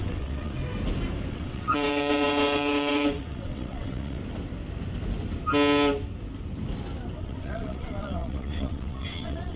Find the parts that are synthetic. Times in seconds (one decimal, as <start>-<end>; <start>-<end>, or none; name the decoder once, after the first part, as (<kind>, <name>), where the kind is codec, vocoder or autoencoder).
0.0-0.6 (vocoder, WaveNeXt); 1.3-4.2; 7.2-9.6